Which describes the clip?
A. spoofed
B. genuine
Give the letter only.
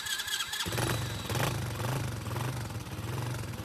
B